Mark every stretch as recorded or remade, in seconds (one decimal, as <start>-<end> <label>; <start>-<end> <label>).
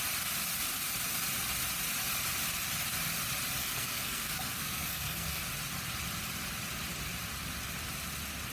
0.0-3.6 recorded; 3.6-5.4 remade; 5.4-8.5 recorded